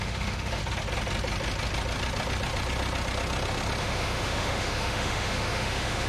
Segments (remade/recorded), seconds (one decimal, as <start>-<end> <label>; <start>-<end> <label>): 0.0-0.6 remade; 0.6-3.8 recorded; 3.8-6.1 remade